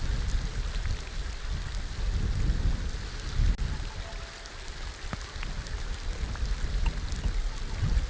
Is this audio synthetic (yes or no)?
no